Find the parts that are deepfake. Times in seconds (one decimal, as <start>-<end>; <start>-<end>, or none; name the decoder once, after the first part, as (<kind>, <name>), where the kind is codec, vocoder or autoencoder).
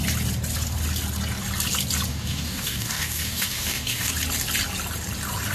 2.1-4.1 (codec, DAC)